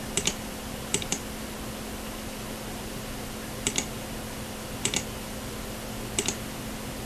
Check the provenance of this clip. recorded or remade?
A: remade